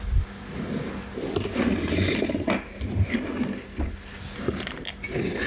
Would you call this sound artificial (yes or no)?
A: no